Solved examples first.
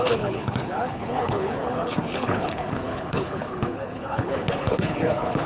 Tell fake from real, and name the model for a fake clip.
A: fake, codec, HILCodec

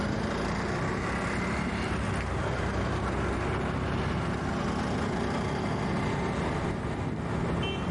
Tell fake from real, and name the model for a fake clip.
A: real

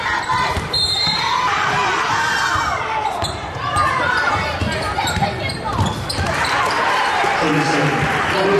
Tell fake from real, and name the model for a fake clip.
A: fake, vocoder, BigVGAN v2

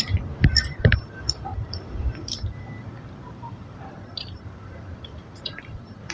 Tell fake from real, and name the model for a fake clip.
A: fake, vocoder, BigVGAN v2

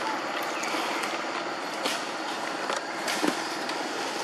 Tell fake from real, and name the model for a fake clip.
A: real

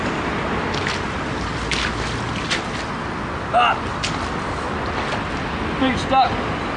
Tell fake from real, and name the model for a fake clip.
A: real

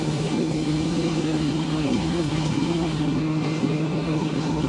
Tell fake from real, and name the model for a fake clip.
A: fake, codec, SNAC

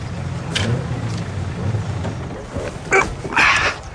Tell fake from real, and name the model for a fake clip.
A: real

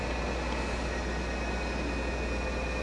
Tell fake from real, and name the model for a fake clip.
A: real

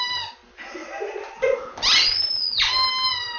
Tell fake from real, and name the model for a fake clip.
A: real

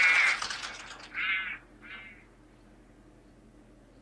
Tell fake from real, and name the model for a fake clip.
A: real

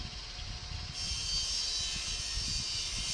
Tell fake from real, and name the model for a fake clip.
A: real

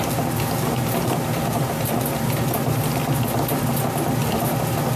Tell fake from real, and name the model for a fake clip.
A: real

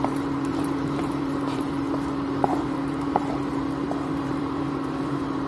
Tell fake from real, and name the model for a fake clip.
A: fake, vocoder, BigVGAN v2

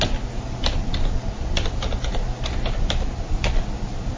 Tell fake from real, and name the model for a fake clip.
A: real